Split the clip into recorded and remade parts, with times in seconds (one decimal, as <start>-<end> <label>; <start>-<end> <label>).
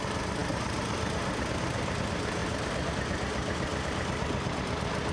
0.0-2.4 recorded; 2.4-2.9 remade; 2.9-3.7 recorded; 3.7-4.5 remade; 4.5-5.1 recorded